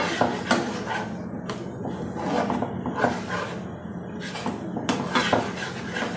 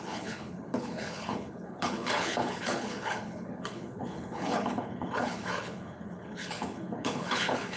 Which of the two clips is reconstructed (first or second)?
second